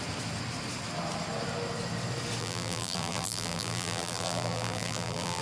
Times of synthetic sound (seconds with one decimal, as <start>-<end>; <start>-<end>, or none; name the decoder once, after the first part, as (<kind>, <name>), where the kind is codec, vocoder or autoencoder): 2.4-5.4 (vocoder, BigVGAN v2)